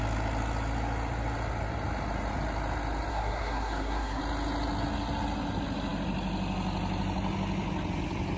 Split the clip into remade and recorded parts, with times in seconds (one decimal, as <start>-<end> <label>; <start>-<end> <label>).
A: 0.0-3.1 recorded; 3.1-4.2 remade; 4.2-8.4 recorded